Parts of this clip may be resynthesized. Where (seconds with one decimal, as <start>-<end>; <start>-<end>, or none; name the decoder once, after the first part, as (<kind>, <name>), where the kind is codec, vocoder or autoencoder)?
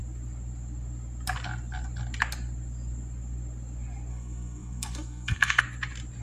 4.1-5.6 (codec, SNAC)